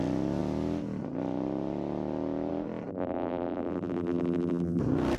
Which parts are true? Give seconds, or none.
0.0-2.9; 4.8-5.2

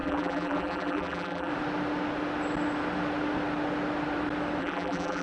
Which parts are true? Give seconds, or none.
1.5-4.6

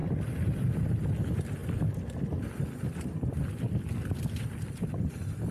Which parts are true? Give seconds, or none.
0.0-5.5

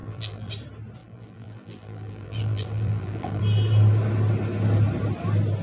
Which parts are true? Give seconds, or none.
0.5-1.0; 3.4-5.6

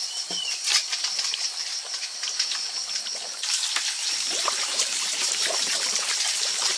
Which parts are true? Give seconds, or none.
1.5-4.1